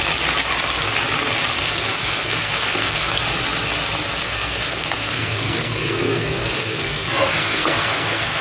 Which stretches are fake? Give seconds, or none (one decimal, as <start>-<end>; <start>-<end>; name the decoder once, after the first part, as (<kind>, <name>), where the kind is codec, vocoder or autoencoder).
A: 1.6-3.2 (codec, SNAC); 4.2-8.4